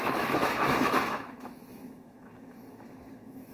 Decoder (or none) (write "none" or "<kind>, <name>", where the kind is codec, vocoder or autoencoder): autoencoder, DAC-VAE